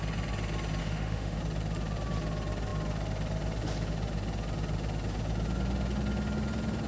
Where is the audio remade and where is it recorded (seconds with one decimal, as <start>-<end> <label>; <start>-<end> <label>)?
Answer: 0.0-0.8 recorded; 0.8-1.4 remade; 1.4-6.9 recorded